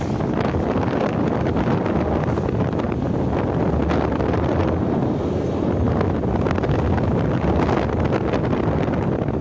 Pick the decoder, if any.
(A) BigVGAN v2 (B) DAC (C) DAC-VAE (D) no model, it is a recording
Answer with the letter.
D